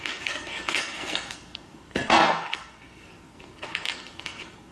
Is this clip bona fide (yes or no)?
no